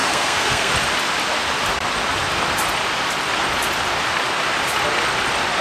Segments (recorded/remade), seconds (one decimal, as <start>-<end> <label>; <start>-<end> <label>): 0.0-0.7 remade; 0.7-5.6 recorded